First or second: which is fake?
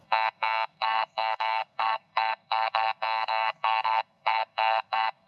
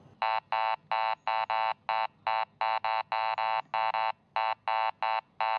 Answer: first